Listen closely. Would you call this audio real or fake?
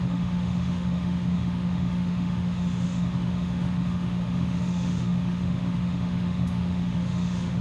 fake